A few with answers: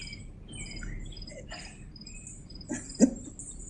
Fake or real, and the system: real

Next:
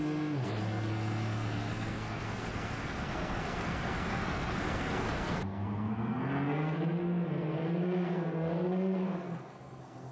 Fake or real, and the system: fake, codec, SNAC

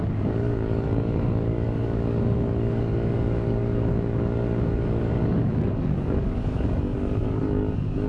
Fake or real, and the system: fake, codec, DAC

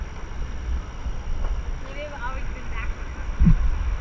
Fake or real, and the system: real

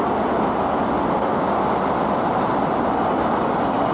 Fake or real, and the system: real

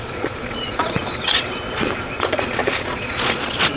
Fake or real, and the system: fake, vocoder, Vocos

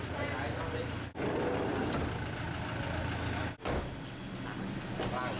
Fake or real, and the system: real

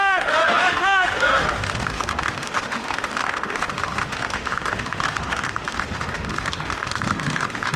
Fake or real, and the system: fake, autoencoder, DAC-VAE